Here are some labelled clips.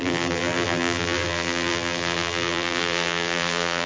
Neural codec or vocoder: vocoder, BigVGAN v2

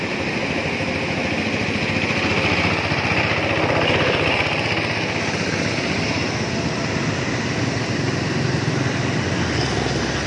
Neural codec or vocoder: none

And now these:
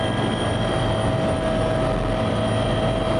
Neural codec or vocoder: none